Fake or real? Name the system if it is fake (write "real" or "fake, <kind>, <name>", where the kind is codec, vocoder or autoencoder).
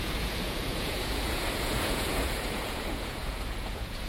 fake, vocoder, Vocos